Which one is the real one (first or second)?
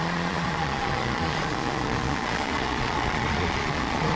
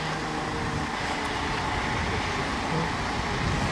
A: second